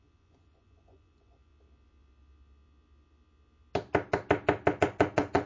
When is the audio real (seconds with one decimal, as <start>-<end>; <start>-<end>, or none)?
1.5-4.8